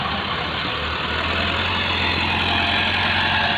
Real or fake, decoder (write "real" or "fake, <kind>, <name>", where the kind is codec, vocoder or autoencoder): real